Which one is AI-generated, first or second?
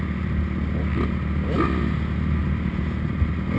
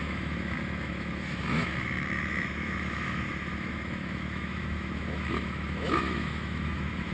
second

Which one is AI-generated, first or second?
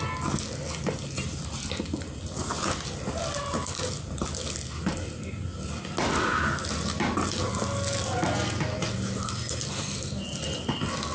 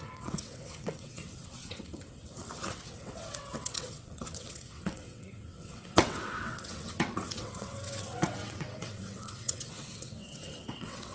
second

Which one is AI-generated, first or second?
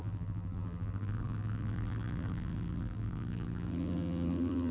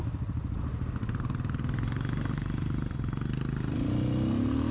first